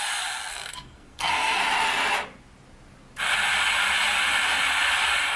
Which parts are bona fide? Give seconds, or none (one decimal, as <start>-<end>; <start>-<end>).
0.0-0.5; 1.6-5.4